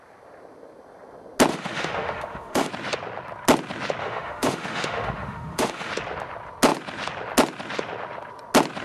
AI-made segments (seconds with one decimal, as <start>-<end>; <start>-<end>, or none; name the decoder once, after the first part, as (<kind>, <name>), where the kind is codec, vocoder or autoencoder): 1.5-2.7 (autoencoder, DAC-VAE); 4.0-5.9